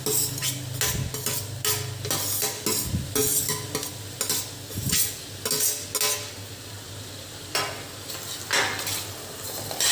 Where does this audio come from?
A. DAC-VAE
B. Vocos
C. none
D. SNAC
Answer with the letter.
C